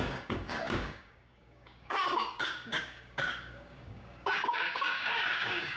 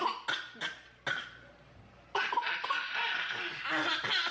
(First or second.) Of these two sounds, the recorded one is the second